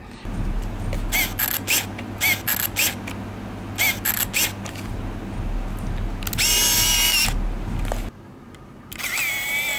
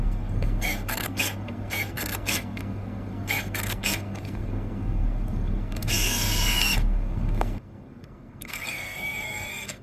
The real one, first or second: first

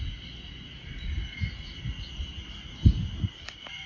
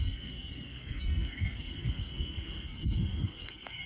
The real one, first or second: first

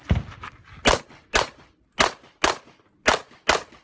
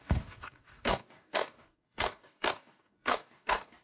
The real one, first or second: first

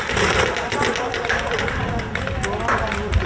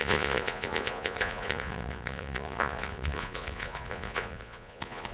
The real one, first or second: first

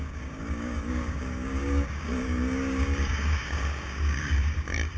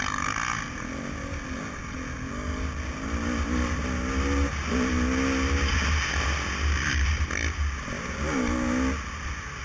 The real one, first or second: second